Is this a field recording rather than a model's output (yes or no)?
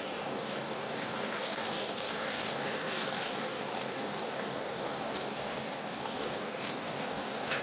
no